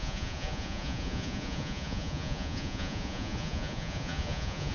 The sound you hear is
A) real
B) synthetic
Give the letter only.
B